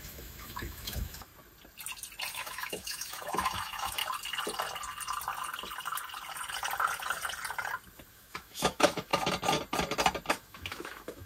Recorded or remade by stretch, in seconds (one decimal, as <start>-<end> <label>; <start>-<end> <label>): 0.0-1.3 remade; 1.3-2.3 recorded; 2.3-4.0 remade; 4.0-8.1 recorded; 8.1-9.1 remade; 9.1-10.3 recorded; 10.3-11.3 remade